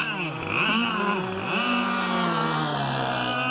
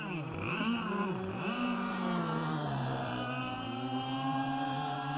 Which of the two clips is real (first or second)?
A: first